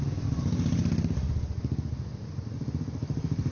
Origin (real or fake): real